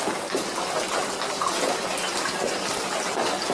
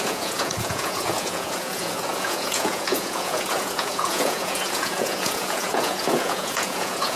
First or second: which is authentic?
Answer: first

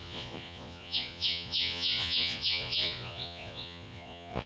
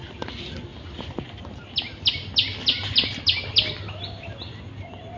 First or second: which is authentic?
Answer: second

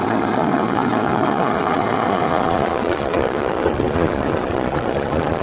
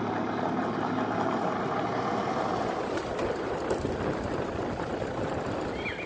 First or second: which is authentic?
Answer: second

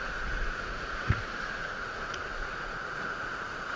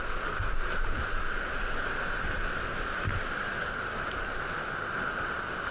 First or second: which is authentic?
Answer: second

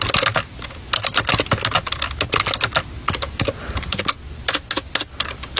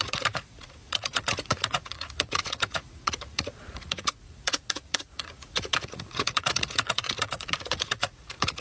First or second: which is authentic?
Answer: first